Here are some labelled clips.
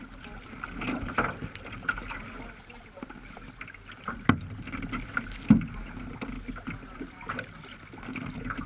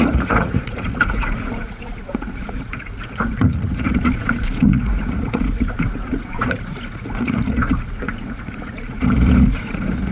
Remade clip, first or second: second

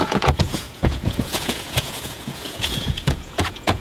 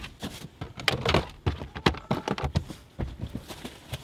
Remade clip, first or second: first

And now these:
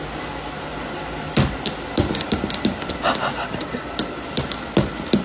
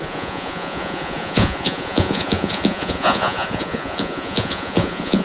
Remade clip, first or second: second